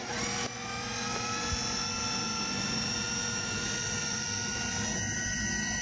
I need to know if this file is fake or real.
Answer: real